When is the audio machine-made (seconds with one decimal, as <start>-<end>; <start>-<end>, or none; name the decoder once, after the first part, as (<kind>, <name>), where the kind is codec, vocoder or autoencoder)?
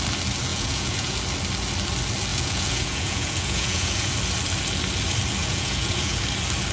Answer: 0.5-1.2 (vocoder, Vocos); 2.3-4.1; 5.4-6.2